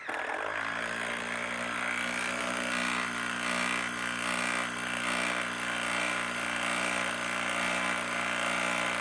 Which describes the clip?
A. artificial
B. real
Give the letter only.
B